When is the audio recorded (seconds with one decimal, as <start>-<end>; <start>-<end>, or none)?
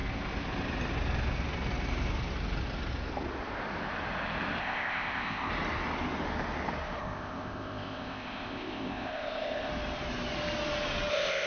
0.0-4.6; 5.5-7.0; 9.7-11.1